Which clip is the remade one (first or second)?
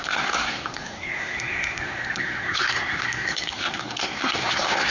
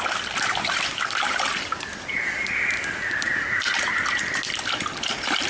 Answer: first